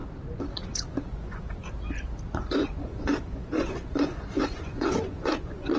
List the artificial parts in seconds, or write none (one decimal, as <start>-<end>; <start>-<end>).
0.7-1.6; 2.4-5.8